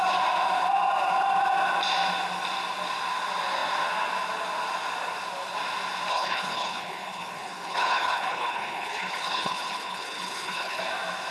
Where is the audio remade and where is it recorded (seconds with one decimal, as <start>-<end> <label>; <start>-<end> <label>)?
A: 0.0-6.1 recorded; 6.1-10.8 remade; 10.8-11.3 recorded